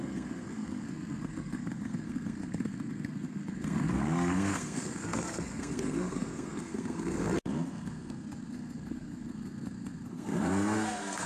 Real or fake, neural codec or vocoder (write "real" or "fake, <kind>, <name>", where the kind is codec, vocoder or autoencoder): fake, codec, SNAC